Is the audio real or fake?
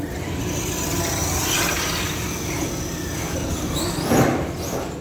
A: real